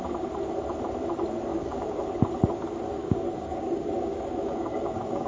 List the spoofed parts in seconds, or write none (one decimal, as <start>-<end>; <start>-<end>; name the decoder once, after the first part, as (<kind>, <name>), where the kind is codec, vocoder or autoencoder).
1.5-2.0 (codec, DAC); 3.0-5.3